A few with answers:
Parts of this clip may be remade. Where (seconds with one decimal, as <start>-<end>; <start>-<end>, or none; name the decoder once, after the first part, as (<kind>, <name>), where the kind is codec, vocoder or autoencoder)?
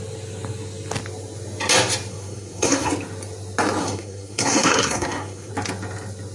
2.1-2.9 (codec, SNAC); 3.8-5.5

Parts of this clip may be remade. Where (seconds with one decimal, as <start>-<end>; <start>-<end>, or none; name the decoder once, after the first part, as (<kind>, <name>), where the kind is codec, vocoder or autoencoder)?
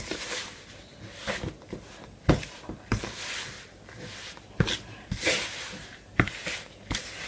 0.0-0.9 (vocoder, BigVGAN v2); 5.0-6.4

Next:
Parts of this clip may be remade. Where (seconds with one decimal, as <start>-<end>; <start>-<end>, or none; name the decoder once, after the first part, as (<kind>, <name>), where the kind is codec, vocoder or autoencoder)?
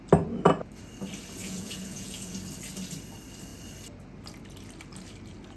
1.4-2.3 (vocoder, Vocos)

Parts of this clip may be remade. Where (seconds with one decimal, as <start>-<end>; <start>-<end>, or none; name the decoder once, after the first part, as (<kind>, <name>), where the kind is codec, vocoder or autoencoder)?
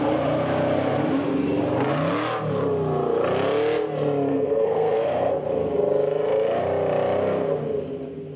4.3-5.3 (codec, SNAC)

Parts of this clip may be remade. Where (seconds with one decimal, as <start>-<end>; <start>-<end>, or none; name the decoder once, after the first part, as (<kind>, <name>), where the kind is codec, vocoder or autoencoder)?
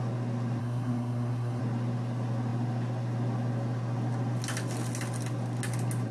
0.6-1.6 (codec, SNAC)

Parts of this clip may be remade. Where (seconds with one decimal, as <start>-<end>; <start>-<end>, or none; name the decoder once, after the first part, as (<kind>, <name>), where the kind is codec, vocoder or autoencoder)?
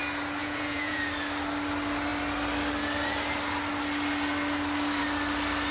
0.4-1.0 (vocoder, Vocos)